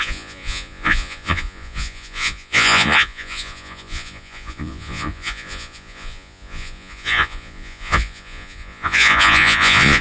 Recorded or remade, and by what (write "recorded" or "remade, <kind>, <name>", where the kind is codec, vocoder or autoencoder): remade, vocoder, Vocos